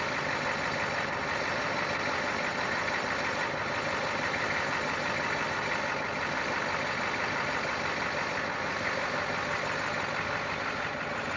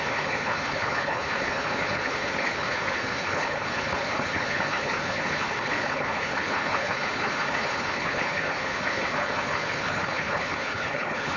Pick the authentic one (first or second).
first